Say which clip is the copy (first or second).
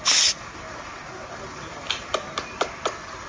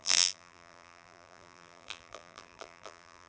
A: second